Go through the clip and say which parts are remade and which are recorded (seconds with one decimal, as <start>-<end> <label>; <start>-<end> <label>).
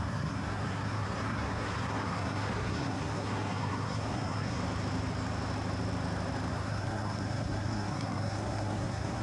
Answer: 0.0-4.6 remade; 4.6-6.5 recorded; 6.5-9.2 remade